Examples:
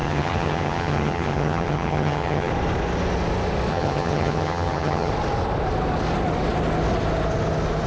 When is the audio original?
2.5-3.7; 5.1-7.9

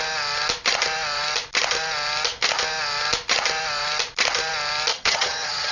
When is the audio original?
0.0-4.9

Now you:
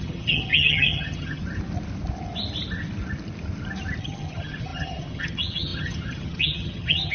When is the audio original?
1.4-4.0

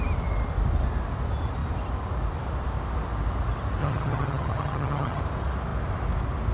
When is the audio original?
0.0-3.8; 5.2-6.5

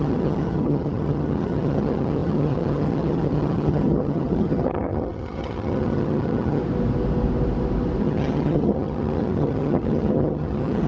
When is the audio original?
6.6-8.0